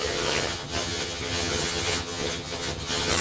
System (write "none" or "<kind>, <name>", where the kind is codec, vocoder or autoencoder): vocoder, HiFi-GAN